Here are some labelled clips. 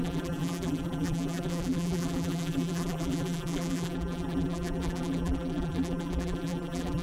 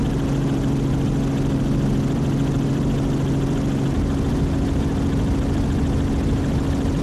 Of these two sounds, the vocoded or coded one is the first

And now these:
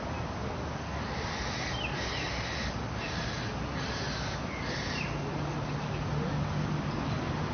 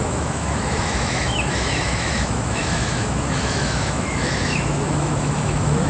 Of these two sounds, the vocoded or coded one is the second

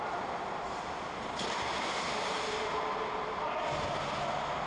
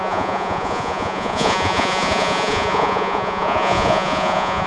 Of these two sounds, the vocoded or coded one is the second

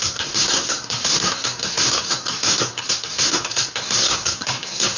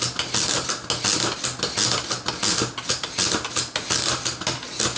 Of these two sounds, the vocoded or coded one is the first